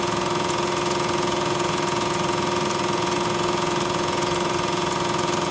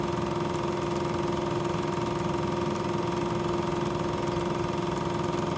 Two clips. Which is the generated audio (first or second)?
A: first